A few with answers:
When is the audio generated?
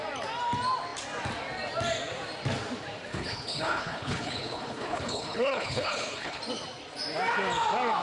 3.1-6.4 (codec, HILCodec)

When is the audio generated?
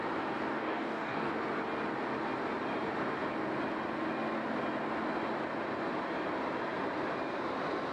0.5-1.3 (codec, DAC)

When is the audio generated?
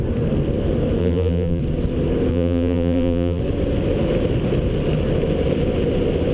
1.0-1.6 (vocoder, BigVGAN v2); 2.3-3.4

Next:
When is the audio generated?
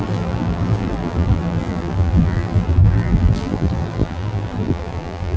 0.0-5.4 (vocoder, BigVGAN v2)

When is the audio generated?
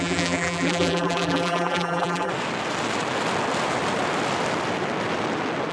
0.0-2.3 (vocoder, BigVGAN v2)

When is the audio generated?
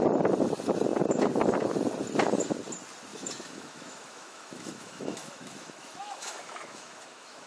3.1-7.5 (autoencoder, DAC-VAE)